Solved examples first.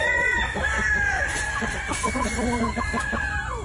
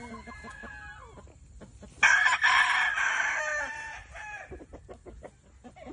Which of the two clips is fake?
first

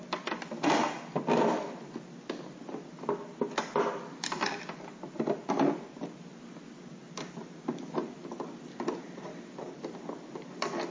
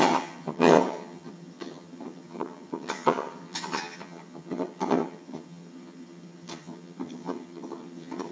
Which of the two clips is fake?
second